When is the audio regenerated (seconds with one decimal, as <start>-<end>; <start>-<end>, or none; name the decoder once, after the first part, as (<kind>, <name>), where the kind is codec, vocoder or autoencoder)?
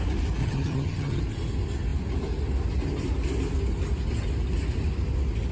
0.4-1.2 (vocoder, HiFi-GAN)